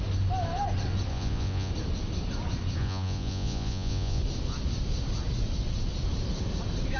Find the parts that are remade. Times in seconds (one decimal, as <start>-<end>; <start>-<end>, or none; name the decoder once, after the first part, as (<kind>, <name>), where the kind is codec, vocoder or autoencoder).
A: 1.1-1.7 (vocoder, Vocos); 2.8-4.2